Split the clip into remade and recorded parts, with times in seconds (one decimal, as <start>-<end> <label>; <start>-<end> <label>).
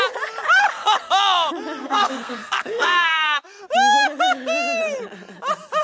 0.0-1.8 recorded; 1.8-3.6 remade; 3.6-5.8 recorded